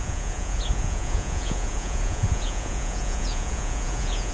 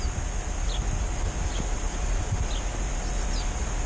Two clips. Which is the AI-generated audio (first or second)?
first